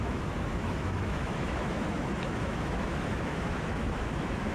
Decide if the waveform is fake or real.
fake